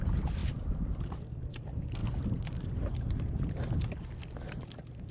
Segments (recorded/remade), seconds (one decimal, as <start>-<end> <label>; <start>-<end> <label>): 0.0-5.1 recorded